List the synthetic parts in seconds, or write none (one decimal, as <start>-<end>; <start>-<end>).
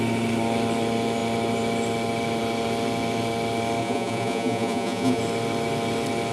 3.8-5.2